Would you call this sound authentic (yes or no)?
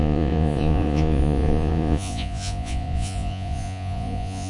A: no